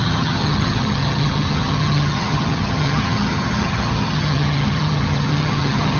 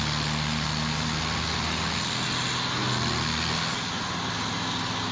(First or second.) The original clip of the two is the second